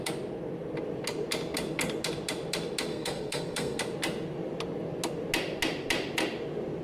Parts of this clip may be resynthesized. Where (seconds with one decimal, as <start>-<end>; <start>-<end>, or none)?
2.9-3.8